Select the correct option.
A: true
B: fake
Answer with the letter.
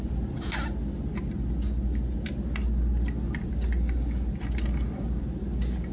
A